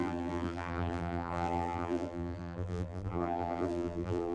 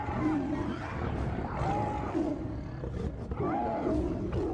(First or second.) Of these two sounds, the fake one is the first